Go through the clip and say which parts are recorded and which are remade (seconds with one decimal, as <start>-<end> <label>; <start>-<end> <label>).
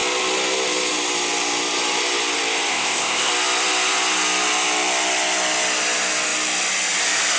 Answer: 0.0-2.7 recorded; 2.7-3.3 remade; 3.3-7.4 recorded